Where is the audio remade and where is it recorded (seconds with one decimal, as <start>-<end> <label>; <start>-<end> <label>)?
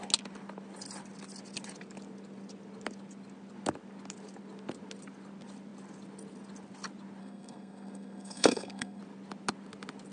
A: 0.0-7.2 recorded; 7.2-9.0 remade; 9.0-10.1 recorded